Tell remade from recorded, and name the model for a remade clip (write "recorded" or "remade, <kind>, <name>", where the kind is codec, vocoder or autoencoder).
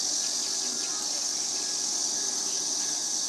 recorded